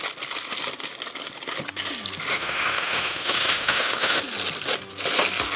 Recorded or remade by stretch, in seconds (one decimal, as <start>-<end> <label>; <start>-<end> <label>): 0.0-2.3 recorded; 2.3-4.2 remade; 4.2-5.6 recorded